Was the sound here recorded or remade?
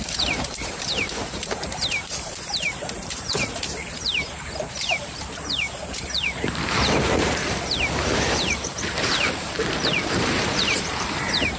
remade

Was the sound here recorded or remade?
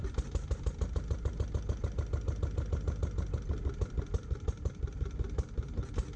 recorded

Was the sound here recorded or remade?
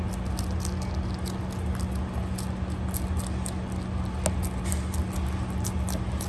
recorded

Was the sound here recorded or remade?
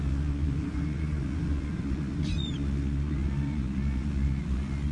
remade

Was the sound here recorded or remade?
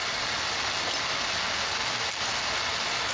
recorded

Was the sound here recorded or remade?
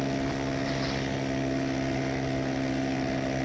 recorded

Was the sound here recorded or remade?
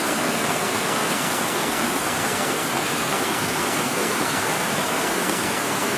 remade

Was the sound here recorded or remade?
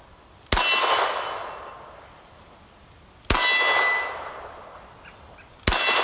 recorded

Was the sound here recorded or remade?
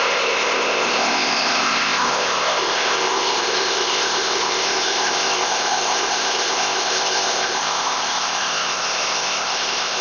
remade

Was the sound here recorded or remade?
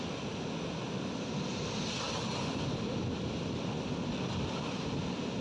recorded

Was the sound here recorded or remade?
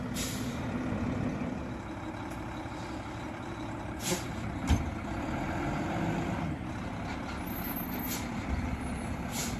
recorded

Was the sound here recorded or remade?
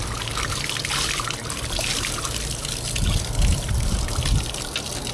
recorded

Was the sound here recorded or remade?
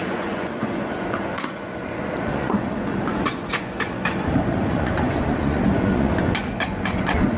remade